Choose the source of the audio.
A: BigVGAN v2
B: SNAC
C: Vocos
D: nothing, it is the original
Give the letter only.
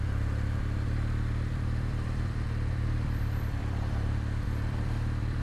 A